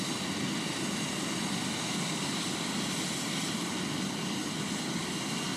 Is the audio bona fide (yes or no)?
yes